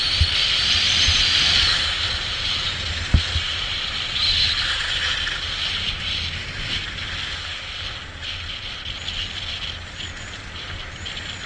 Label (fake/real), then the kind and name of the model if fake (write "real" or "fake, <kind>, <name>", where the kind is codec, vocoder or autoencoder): real